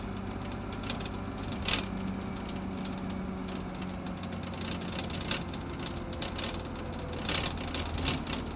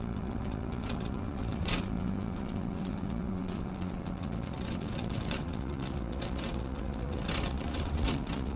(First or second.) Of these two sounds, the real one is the first